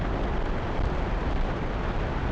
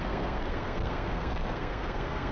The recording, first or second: first